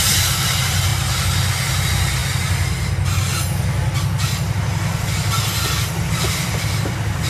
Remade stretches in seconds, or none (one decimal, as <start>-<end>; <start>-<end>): 0.0-0.9; 1.8-2.2; 6.1-7.3